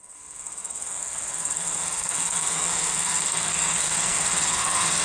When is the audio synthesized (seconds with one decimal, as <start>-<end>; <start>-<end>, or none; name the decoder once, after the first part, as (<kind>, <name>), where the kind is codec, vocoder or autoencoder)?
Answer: 0.0-5.0 (codec, SNAC)